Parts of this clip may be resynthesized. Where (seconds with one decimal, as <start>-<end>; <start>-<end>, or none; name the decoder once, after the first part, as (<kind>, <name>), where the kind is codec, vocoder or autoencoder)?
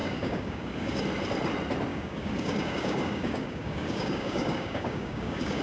0.0-1.0 (codec, DAC); 1.9-5.6